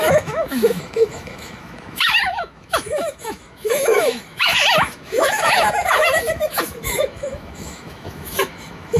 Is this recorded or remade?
remade